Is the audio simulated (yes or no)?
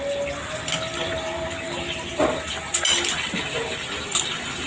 no